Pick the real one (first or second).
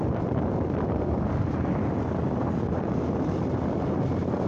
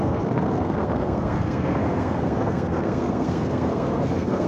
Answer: first